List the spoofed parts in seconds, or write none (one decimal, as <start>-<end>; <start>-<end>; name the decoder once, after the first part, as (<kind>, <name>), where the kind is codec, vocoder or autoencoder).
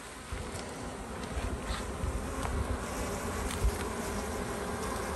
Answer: none